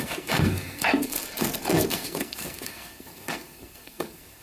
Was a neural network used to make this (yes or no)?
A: yes